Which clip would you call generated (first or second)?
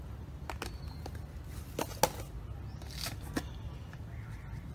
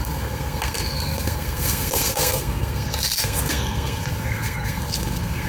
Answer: second